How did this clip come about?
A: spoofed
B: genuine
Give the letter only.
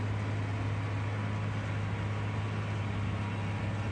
B